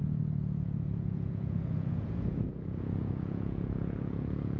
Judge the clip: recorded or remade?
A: remade